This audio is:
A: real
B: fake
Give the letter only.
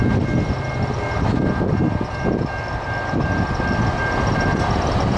A